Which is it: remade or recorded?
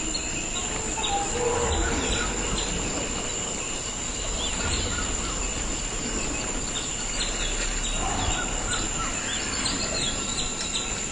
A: recorded